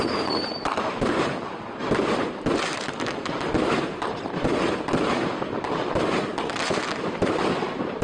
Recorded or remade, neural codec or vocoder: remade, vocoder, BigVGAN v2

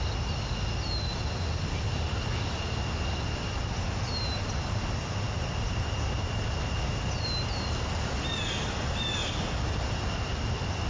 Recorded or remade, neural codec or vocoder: recorded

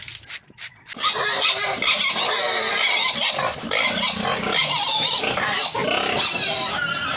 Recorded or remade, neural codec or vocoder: recorded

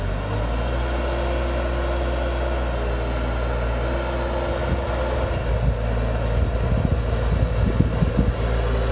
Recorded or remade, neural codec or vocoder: recorded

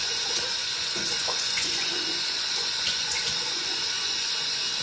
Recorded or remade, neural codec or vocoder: remade, vocoder, Vocos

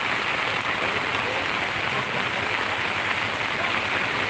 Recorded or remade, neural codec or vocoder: recorded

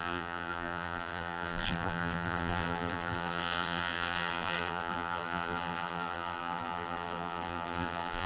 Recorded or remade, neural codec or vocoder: remade, vocoder, BigVGAN v2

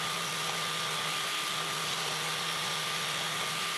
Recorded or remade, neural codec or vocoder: recorded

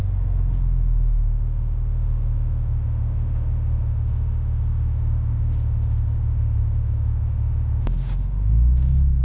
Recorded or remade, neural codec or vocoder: remade, autoencoder, DAC-VAE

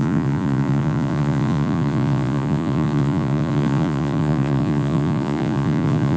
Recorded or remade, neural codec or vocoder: remade, vocoder, Vocos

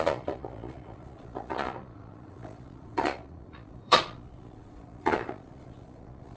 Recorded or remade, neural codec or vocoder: remade, vocoder, Vocos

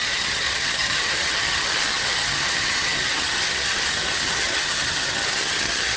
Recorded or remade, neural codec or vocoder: remade, vocoder, HiFi-GAN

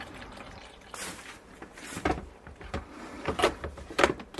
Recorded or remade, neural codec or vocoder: remade, vocoder, BigVGAN v2